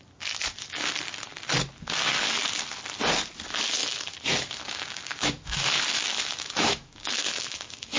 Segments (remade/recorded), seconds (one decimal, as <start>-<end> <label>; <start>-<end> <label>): 0.0-3.8 recorded; 3.8-8.0 remade